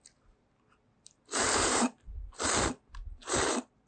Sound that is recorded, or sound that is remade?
recorded